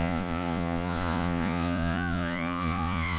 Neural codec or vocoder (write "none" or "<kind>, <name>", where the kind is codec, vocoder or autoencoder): vocoder, Vocos